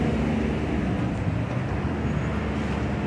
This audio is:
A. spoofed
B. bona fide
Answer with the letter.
B